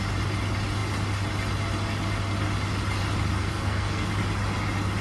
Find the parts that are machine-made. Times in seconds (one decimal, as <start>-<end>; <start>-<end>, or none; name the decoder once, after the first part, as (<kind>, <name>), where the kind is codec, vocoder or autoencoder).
3.4-4.1 (codec, SNAC)